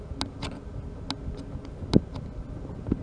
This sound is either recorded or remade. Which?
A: recorded